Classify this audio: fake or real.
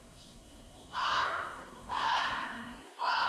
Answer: fake